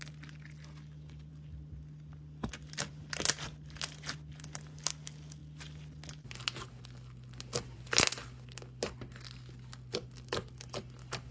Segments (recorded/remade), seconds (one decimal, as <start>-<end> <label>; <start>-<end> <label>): 0.0-11.3 recorded